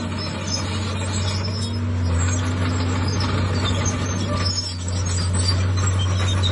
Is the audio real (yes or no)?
yes